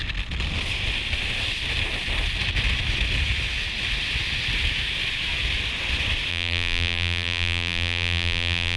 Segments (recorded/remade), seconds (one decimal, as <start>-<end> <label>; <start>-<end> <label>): 0.0-6.3 recorded; 6.3-8.8 remade